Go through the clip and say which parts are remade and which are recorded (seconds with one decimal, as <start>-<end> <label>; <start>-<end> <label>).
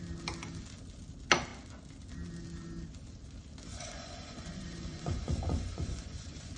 0.0-3.7 recorded; 3.7-6.6 remade